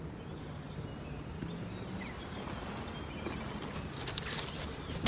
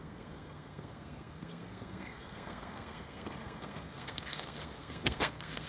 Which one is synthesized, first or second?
second